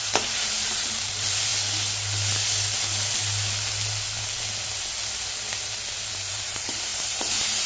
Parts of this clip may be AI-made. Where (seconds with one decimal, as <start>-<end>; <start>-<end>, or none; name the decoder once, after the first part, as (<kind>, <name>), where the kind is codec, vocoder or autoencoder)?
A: 0.0-1.5 (vocoder, BigVGAN v2); 6.1-7.7